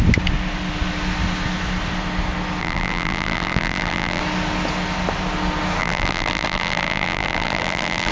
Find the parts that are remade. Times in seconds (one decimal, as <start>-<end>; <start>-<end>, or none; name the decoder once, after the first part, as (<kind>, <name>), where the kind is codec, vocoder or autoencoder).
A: 2.6-4.2 (vocoder, BigVGAN v2); 5.8-8.1